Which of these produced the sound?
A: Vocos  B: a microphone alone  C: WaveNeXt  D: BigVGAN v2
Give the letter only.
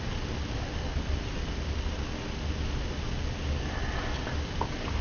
B